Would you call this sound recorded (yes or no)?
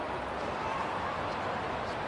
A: yes